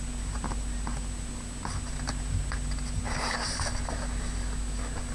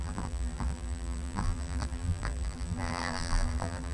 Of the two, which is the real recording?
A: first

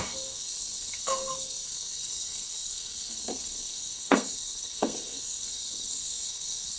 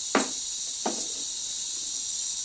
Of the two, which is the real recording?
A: second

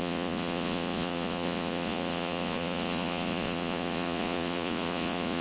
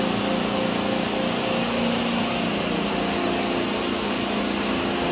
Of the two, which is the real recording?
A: second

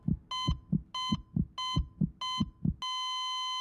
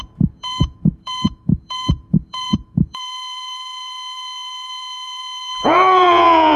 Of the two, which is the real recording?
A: first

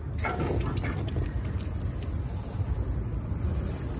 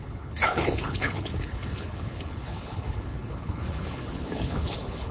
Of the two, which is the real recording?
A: first